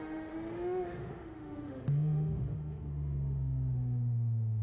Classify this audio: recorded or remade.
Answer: remade